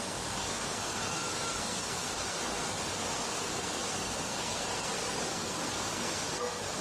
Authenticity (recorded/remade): remade